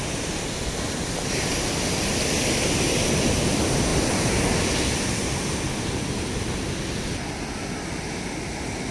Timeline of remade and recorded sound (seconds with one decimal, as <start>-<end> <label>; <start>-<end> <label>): 0.0-8.9 recorded